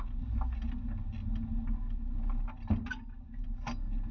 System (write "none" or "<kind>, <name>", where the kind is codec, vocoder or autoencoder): none